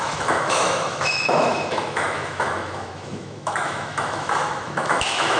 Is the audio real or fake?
fake